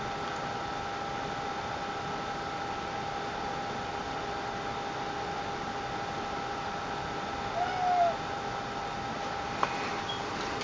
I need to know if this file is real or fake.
real